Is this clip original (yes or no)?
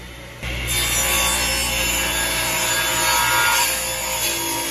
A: yes